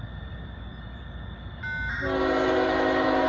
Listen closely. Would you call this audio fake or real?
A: real